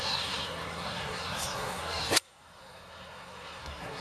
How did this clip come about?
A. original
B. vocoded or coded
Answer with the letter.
B